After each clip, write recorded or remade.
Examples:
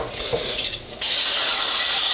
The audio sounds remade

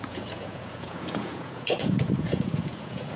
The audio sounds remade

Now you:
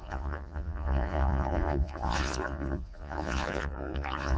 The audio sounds remade